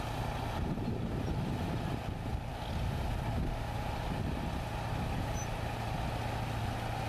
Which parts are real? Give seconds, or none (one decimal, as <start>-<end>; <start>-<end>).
0.0-7.1